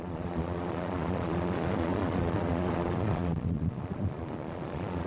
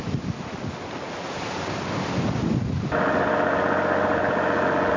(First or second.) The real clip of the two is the second